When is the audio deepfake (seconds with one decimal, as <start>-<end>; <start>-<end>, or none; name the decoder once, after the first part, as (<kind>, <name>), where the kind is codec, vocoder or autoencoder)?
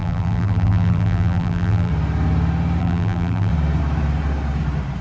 0.0-1.9 (vocoder, BigVGAN v2); 2.8-3.5